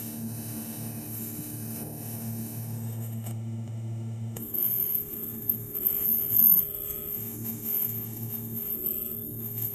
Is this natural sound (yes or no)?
no